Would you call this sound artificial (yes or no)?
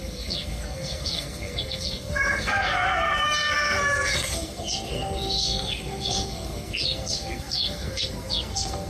yes